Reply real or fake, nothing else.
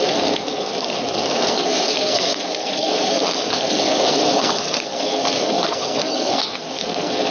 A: fake